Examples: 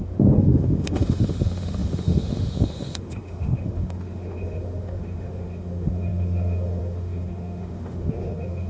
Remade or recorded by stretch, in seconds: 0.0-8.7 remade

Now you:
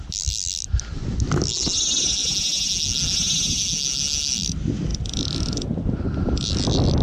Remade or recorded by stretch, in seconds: 0.0-7.0 recorded

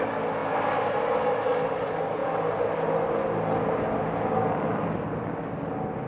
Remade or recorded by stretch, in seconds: 0.0-6.1 recorded

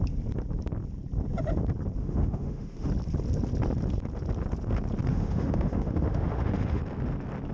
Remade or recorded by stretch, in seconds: 0.0-2.0 recorded; 2.0-2.9 remade; 2.9-5.1 recorded; 5.1-6.8 remade; 6.8-7.5 recorded